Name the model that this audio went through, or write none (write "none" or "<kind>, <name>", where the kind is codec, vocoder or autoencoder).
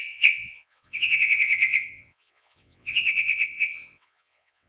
vocoder, WaveNeXt